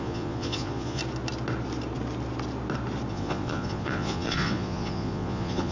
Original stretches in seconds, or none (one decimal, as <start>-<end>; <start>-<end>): 1.0-3.1